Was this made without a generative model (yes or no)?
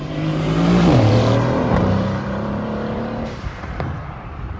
no